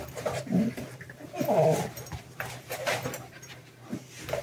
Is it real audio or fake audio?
fake